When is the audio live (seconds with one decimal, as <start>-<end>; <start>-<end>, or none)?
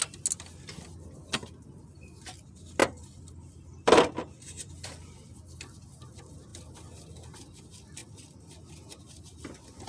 0.0-2.8; 5.4-8.0; 8.7-9.9